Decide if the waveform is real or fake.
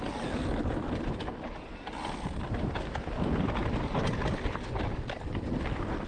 real